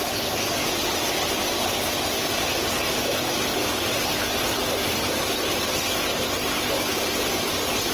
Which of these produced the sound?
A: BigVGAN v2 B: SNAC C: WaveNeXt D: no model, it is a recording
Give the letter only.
D